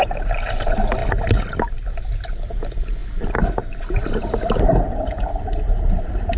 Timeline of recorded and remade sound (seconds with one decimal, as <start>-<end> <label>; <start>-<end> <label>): 0.0-6.4 recorded